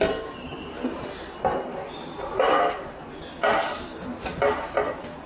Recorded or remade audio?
recorded